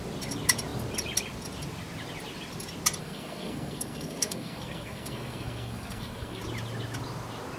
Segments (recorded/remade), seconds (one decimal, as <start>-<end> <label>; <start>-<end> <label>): 0.0-3.0 recorded; 3.0-6.4 remade; 6.4-7.6 recorded

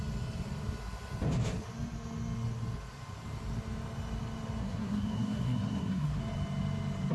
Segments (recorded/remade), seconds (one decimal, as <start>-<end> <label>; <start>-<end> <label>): 0.0-4.6 recorded; 4.6-6.2 remade; 6.2-7.1 recorded